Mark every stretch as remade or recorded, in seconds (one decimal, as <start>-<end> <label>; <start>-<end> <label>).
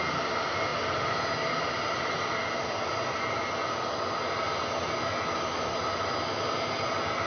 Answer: 0.0-7.3 recorded